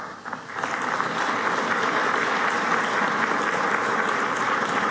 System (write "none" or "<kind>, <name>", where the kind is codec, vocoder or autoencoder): none